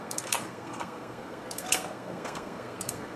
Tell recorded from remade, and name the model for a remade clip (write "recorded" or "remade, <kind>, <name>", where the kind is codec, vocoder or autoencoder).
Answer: remade, codec, SNAC